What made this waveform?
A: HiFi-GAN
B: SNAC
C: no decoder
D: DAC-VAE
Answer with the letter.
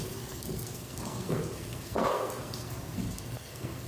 B